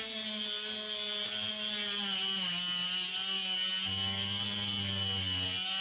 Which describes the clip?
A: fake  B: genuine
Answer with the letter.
B